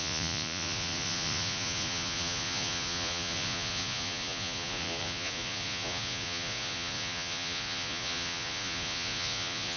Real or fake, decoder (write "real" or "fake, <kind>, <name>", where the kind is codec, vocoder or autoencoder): fake, vocoder, Vocos